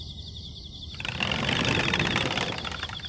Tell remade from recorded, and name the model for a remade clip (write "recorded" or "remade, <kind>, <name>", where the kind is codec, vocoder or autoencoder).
recorded